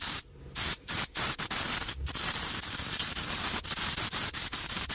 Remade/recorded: remade